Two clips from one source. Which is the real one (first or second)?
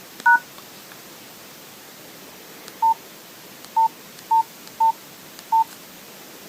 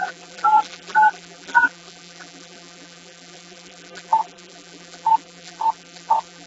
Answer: first